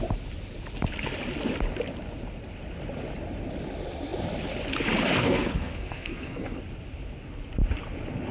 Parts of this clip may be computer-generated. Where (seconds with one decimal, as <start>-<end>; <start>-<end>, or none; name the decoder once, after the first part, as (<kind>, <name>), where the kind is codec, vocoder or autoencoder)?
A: 5.2-6.6 (codec, SNAC)